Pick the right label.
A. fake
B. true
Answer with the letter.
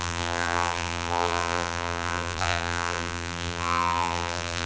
A